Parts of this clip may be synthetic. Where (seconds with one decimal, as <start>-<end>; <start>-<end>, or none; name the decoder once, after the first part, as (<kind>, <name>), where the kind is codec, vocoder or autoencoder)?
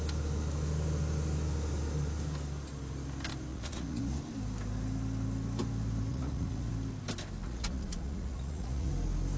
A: 3.5-4.0 (vocoder, Vocos); 6.1-6.7; 7.4-8.9